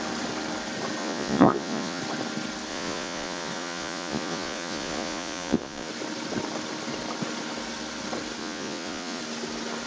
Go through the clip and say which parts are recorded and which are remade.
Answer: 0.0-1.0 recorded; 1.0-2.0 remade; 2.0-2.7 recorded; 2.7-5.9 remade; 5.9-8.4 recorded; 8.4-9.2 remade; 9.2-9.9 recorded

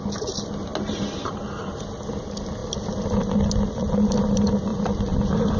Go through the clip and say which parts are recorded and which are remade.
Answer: 0.0-2.6 recorded; 2.6-3.3 remade; 3.3-4.7 recorded; 4.7-5.6 remade

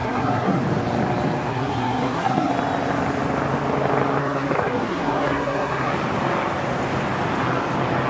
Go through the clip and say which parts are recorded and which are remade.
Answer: 0.0-0.6 remade; 0.6-1.5 recorded; 1.5-2.5 remade; 2.5-4.2 recorded; 4.2-5.9 remade; 5.9-8.1 recorded

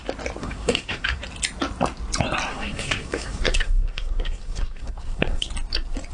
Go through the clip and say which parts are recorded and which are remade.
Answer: 0.0-0.4 recorded; 0.4-1.2 remade; 1.2-2.5 recorded; 2.5-5.5 remade; 5.5-6.1 recorded

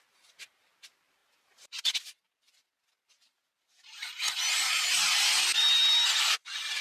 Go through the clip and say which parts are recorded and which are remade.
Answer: 0.0-6.8 recorded